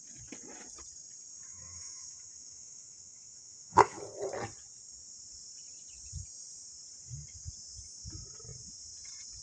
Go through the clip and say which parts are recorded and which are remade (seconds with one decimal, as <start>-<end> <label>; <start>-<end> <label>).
0.0-1.5 recorded; 1.5-4.0 remade; 4.0-9.4 recorded